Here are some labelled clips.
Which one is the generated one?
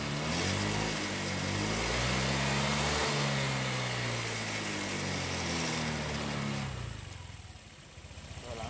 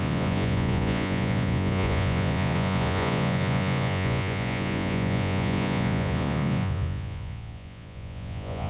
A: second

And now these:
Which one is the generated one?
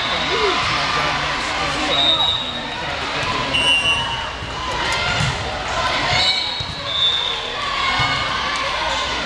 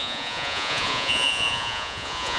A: second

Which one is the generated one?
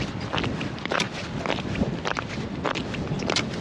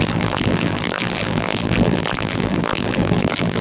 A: second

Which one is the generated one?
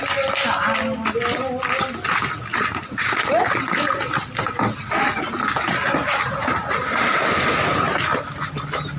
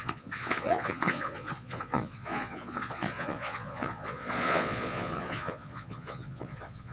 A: second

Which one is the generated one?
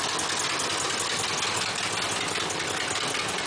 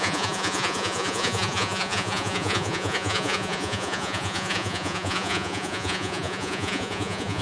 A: second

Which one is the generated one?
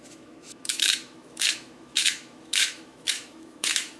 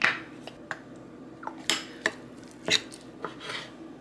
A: first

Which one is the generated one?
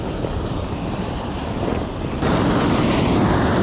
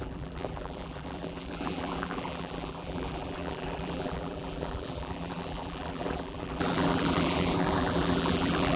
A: second